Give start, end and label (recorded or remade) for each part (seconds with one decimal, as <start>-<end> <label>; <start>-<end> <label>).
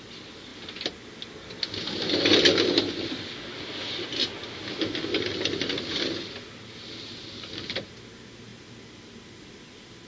0.0-10.1 recorded